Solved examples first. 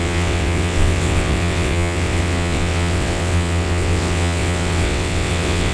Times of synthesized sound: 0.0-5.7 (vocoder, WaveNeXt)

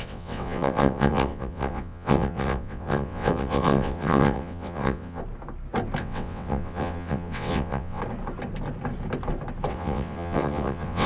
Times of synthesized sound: 0.0-5.2 (vocoder, WaveNeXt); 6.0-8.0; 9.7-11.1

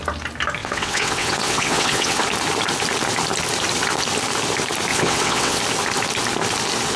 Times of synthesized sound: 0.6-2.2 (vocoder, WaveNeXt); 4.9-5.6

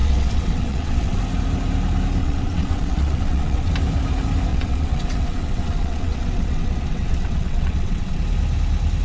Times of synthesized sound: 0.0-1.2 (vocoder, WaveNeXt); 2.2-3.7; 4.5-8.2